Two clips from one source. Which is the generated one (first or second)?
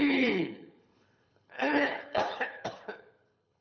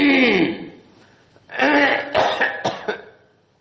first